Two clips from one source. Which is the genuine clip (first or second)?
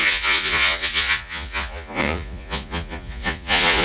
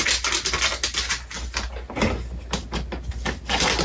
second